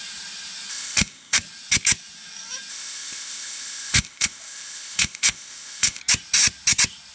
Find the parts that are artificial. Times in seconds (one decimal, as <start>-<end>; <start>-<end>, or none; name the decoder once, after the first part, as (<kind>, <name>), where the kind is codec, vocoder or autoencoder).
0.7-1.4 (codec, ZipCodec); 2.7-6.0